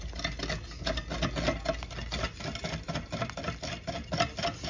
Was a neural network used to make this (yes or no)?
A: no